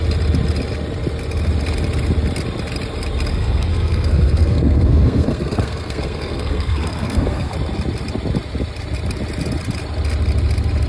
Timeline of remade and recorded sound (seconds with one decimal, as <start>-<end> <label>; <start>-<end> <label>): 0.0-3.3 recorded; 3.3-7.5 remade; 7.5-10.9 recorded

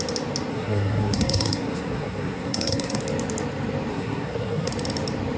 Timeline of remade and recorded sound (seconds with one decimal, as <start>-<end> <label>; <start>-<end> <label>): 0.0-0.5 recorded; 0.5-3.0 remade; 3.0-3.9 recorded; 3.9-4.7 remade; 4.7-5.4 recorded